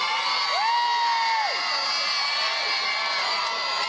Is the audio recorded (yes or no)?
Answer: yes